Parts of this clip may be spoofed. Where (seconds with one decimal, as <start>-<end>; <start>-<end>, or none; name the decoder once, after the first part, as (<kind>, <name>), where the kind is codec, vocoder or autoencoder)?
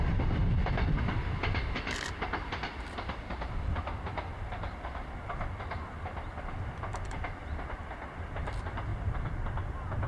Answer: 0.0-8.9 (vocoder, BigVGAN v2)